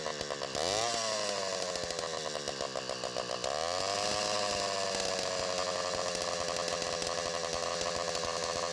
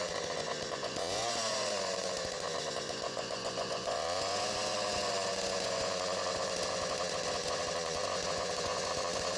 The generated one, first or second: second